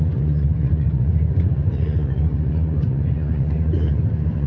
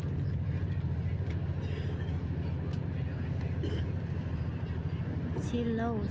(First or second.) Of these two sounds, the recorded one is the second